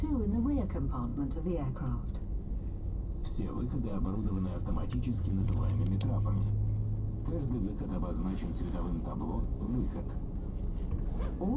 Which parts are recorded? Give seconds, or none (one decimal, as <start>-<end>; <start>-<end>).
0.0-3.2; 5.8-11.6